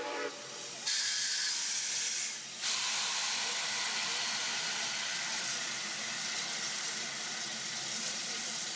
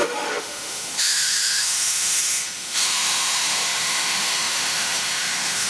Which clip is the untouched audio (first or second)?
first